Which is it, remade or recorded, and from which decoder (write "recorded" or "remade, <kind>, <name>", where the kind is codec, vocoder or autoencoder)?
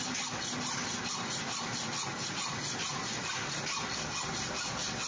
recorded